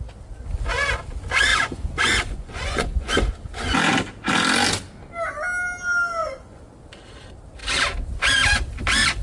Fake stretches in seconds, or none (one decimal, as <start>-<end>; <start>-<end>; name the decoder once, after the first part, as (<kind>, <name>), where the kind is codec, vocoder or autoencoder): 1.5-3.1 (vocoder, Vocos); 6.2-6.8